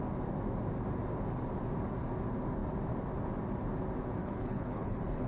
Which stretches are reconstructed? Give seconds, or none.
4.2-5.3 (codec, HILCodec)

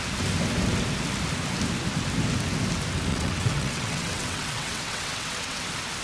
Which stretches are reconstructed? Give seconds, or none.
3.1-5.6 (vocoder, WaveNeXt)

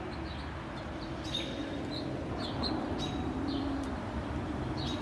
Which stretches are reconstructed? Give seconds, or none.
1.6-4.6 (vocoder, BigVGAN v2)

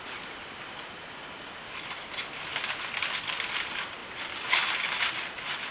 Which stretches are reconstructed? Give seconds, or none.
none

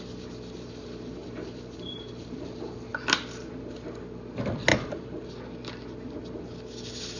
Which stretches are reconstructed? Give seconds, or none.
1.2-2.4 (vocoder, BigVGAN v2); 4.7-5.2

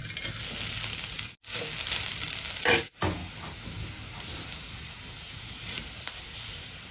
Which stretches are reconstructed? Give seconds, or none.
none